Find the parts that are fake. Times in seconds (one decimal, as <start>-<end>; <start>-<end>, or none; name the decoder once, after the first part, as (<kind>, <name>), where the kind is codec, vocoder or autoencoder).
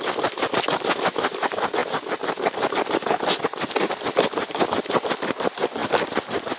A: none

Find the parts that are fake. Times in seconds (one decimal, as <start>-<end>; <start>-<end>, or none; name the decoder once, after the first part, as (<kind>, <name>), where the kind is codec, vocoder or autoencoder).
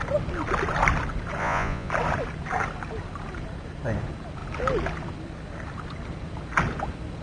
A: 1.4-1.9 (vocoder, Vocos)